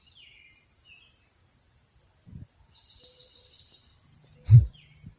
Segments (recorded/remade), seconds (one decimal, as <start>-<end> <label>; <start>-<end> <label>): 0.0-3.2 recorded; 3.2-4.6 remade; 4.6-5.2 recorded